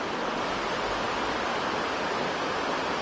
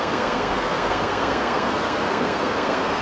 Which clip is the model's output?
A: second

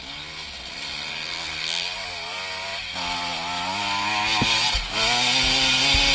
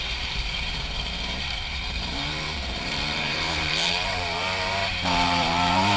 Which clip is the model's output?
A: second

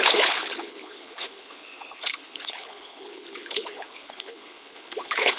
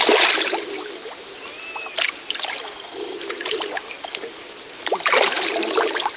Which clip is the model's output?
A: first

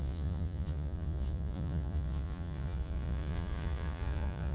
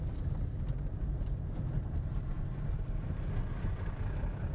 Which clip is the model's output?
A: first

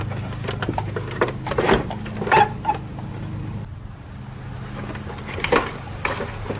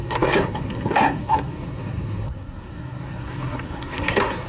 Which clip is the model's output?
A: second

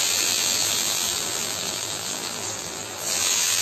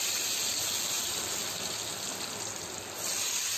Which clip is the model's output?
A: first